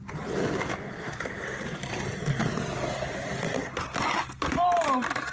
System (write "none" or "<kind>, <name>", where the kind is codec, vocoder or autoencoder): none